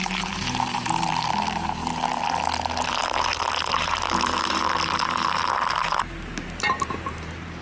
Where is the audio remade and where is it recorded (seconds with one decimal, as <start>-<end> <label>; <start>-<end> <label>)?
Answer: 0.0-1.8 remade; 1.8-3.7 recorded; 3.7-4.6 remade; 4.6-5.7 recorded; 5.7-7.6 remade